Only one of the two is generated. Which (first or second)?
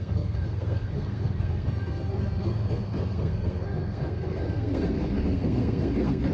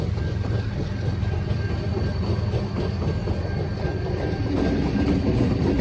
first